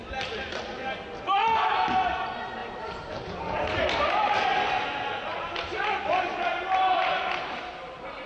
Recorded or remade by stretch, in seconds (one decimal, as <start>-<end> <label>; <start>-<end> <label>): 0.0-0.7 remade; 0.7-2.6 recorded; 2.6-4.3 remade; 4.3-8.3 recorded